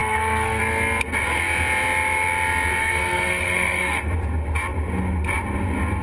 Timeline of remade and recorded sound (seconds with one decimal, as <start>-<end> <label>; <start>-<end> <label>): 0.0-0.6 remade; 0.6-2.8 recorded; 2.8-4.1 remade; 4.1-6.0 recorded